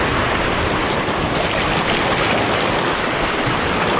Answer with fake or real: real